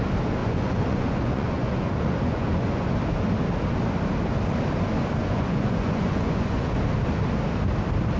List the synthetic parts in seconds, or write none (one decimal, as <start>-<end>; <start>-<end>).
0.4-2.8; 5.2-6.8